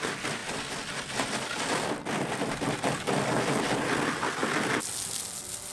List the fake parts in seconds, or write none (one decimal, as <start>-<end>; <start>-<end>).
none